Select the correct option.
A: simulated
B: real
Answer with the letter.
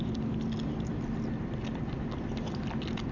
B